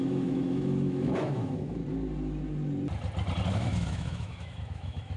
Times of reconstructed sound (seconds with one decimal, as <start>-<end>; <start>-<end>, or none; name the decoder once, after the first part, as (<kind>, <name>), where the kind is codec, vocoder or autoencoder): 0.0-1.8 (autoencoder, DAC-VAE); 3.5-5.2